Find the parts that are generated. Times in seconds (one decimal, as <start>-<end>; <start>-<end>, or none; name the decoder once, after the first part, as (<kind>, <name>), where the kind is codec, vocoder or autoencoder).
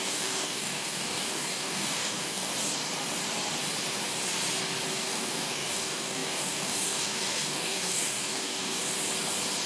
0.0-2.5 (codec, DAC); 4.9-8.8